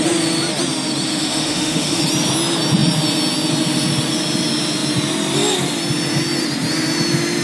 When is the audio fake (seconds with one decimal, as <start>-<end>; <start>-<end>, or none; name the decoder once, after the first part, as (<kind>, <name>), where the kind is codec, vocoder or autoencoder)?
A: 1.1-2.0 (autoencoder, DAC-VAE)